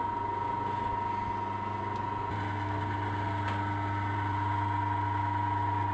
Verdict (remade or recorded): recorded